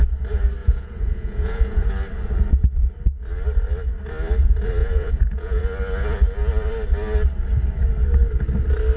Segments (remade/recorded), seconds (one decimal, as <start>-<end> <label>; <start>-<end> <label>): 0.0-0.6 recorded; 0.6-1.9 remade; 1.9-4.8 recorded; 4.8-5.6 remade; 5.6-9.0 recorded